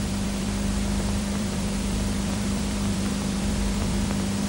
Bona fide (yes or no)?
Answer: no